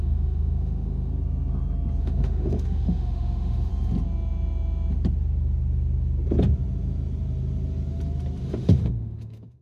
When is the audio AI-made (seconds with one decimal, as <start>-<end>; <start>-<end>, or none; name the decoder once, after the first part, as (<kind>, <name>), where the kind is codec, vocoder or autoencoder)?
0.0-1.1 (autoencoder, DAC-VAE); 2.0-3.7; 8.4-9.6